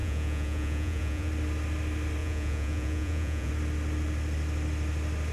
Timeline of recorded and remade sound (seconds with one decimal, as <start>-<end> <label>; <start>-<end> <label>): 0.0-1.3 remade; 1.3-2.2 recorded; 2.2-3.5 remade; 3.5-5.3 recorded